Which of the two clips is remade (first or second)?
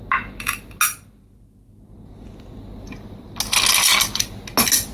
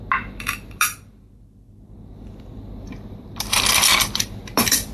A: second